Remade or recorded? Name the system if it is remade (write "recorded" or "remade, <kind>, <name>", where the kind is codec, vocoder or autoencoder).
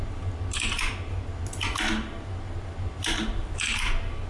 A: recorded